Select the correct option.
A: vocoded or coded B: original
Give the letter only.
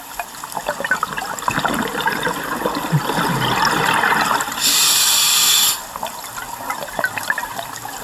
B